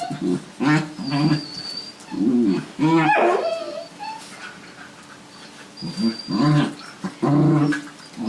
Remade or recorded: recorded